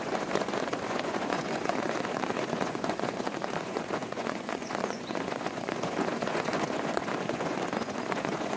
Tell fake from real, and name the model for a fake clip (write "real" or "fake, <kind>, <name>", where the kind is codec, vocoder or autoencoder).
fake, vocoder, Vocos